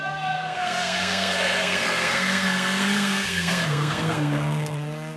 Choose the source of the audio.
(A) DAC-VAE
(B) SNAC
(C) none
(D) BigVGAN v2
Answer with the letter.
B